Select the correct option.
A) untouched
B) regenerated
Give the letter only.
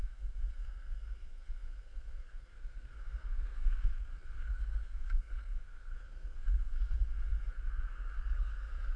B